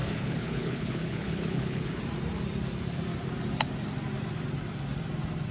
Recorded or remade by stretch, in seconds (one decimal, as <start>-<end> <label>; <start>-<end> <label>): 0.0-2.0 remade; 2.0-5.5 recorded